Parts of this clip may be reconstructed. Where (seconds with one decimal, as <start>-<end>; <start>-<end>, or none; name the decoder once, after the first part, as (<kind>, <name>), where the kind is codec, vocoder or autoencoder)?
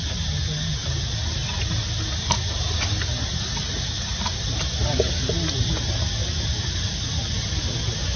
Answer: none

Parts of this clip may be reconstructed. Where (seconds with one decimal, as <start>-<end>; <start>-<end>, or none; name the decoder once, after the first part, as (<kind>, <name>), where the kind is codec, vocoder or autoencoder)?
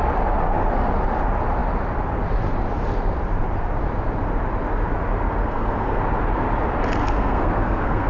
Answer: 5.4-6.0 (codec, SNAC); 7.0-8.1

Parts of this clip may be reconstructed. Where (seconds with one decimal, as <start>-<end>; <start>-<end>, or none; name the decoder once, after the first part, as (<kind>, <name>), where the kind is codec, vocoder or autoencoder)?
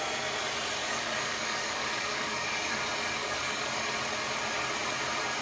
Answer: 0.8-2.8 (codec, DAC); 3.2-3.9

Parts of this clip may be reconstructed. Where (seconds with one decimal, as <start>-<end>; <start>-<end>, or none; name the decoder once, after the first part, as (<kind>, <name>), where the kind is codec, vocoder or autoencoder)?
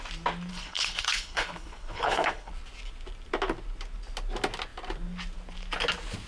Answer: 0.5-2.5 (codec, HILCodec)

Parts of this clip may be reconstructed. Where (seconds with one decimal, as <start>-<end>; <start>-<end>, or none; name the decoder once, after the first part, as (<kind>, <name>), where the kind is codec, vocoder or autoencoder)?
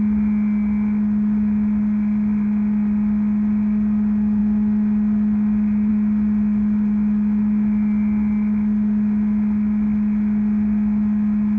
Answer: none